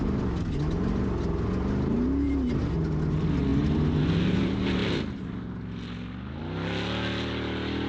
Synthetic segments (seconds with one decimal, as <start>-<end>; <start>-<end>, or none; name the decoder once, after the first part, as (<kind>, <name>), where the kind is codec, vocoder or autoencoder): none